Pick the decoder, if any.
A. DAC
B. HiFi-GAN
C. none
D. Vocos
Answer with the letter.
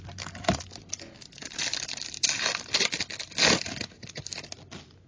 C